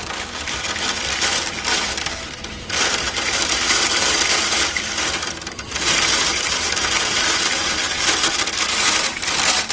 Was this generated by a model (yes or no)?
yes